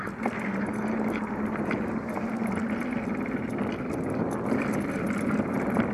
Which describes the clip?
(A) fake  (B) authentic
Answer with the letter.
B